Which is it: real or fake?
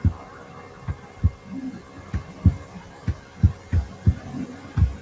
real